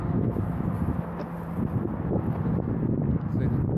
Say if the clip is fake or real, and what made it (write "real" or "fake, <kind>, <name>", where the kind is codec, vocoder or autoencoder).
real